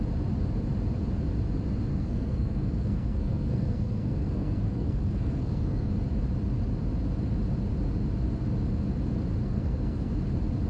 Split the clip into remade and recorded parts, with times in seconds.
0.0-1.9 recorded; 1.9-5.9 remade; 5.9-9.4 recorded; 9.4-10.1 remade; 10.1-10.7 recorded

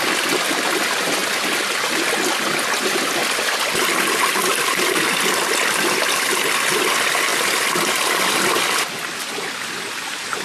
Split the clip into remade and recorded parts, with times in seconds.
0.0-10.4 recorded

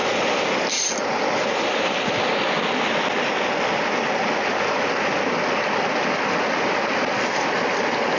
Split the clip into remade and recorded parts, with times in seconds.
0.0-8.2 recorded